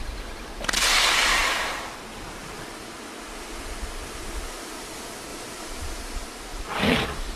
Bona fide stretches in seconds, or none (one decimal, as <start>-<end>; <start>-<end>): 0.0-5.3; 6.8-7.4